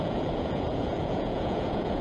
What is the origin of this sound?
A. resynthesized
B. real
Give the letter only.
A